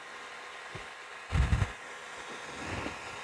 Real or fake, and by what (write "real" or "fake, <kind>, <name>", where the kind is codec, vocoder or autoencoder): real